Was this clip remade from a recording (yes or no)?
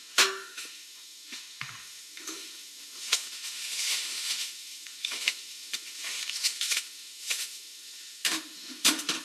yes